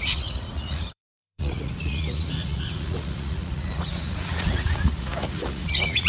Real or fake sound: fake